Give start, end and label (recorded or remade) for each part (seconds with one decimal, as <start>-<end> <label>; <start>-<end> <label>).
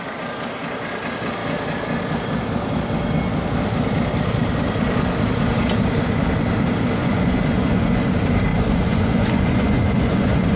0.0-7.0 recorded; 7.0-8.1 remade; 8.1-8.5 recorded; 8.5-10.6 remade